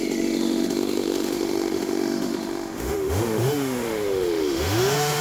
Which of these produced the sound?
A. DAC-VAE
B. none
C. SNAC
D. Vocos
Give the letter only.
A